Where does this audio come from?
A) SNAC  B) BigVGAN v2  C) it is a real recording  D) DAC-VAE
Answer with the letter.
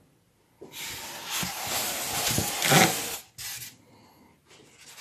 C